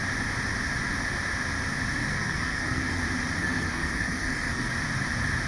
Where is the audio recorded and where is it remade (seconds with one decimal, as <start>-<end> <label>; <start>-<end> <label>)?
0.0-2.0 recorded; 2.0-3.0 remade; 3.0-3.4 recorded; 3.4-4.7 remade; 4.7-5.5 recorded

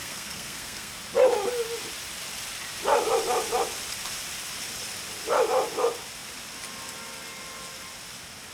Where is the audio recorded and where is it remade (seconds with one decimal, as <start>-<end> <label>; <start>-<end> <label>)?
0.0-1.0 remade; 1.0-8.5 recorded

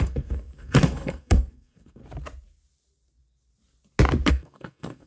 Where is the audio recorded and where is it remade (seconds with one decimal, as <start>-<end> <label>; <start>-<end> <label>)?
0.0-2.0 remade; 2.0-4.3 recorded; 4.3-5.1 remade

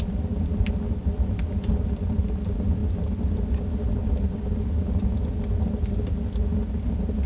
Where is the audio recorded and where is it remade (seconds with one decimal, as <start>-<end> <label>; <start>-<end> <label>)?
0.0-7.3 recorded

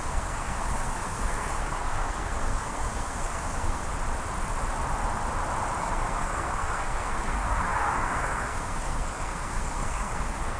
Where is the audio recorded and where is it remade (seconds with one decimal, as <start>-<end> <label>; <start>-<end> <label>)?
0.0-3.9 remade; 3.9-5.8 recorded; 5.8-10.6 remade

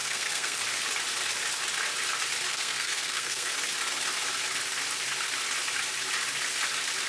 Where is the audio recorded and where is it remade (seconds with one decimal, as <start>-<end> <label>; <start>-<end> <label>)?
0.0-0.6 remade; 0.6-2.5 recorded; 2.5-3.5 remade; 3.5-7.1 recorded

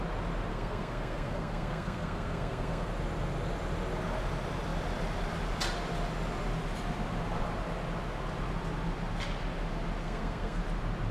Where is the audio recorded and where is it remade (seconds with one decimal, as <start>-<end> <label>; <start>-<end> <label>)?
0.0-0.5 recorded; 0.5-2.9 remade; 2.9-10.0 recorded; 10.0-10.6 remade; 10.6-11.1 recorded